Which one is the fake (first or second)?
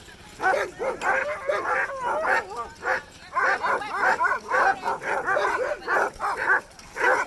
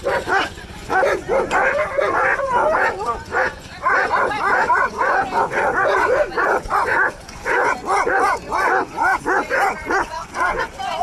second